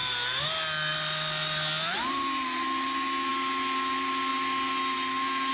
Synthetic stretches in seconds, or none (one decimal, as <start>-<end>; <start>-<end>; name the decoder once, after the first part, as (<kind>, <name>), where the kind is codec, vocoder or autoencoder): none